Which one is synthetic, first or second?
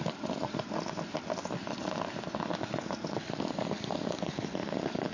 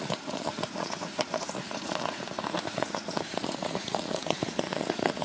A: second